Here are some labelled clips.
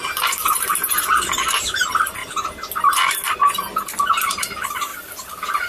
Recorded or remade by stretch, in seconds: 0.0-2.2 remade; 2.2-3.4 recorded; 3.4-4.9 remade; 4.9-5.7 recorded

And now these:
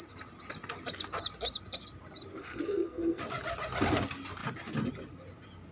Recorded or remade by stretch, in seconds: 0.0-2.3 recorded; 2.3-3.2 remade; 3.2-5.7 recorded

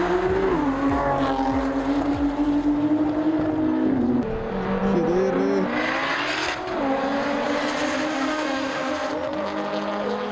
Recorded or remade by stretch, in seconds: 0.0-8.1 recorded; 8.1-8.9 remade; 8.9-10.3 recorded

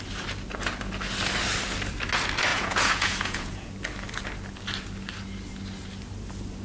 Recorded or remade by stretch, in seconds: 0.0-2.5 recorded; 2.5-3.7 remade; 3.7-6.6 recorded

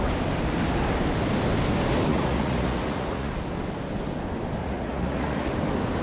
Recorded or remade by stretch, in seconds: 0.0-2.1 recorded; 2.1-3.4 remade; 3.4-4.6 recorded; 4.6-5.5 remade; 5.5-6.0 recorded

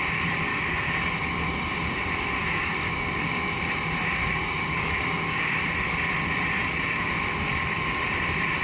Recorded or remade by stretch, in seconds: 0.0-0.5 recorded; 0.5-1.1 remade; 1.1-2.4 recorded; 2.4-3.5 remade; 3.5-4.2 recorded; 4.2-5.6 remade; 5.6-8.6 recorded

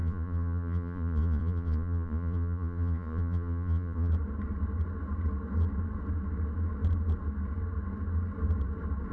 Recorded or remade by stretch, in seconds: 0.0-4.1 remade; 4.1-9.1 recorded

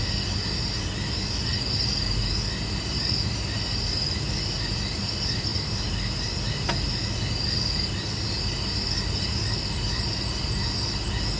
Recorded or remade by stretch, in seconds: 0.0-11.4 recorded